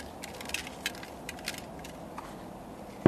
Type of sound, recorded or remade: recorded